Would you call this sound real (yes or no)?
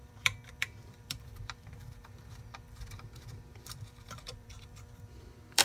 no